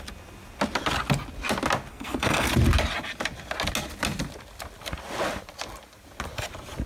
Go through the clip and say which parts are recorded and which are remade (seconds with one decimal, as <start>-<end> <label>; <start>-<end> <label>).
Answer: 0.0-1.9 recorded; 1.9-2.5 remade; 2.5-6.9 recorded